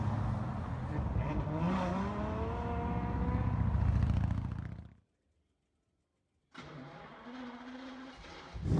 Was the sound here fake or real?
real